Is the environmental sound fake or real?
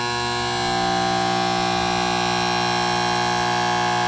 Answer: real